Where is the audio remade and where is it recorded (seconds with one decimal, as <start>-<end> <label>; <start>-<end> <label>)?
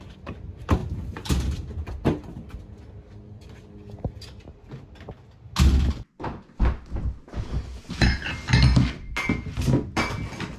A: 0.0-10.6 recorded